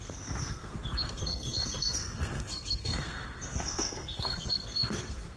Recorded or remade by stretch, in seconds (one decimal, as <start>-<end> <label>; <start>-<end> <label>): 0.0-5.4 remade